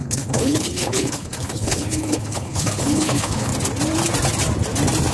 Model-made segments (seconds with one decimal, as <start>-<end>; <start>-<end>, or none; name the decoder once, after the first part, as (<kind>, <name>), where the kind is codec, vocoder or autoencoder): 0.0-3.5 (codec, HILCodec)